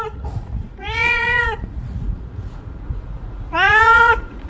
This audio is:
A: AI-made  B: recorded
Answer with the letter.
A